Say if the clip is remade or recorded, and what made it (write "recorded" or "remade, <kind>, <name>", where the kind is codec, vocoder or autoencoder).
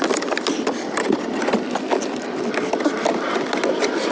remade, vocoder, BigVGAN v2